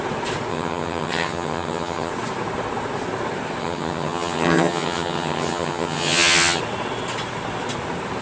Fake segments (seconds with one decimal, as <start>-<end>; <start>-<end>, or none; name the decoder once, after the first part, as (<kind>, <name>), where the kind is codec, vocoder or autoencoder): 0.5-2.1 (vocoder, HiFi-GAN); 3.6-6.6